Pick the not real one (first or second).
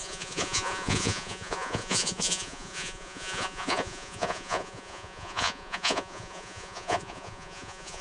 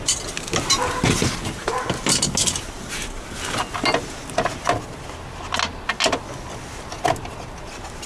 first